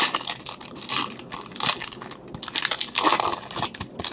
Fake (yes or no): no